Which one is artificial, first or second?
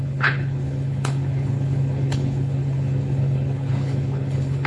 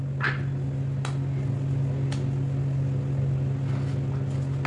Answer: first